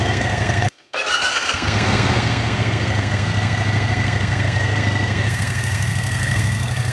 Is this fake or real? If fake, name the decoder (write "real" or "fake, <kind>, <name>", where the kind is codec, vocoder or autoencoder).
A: fake, codec, SNAC